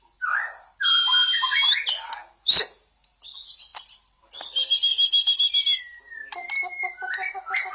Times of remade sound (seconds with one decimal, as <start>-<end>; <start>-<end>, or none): none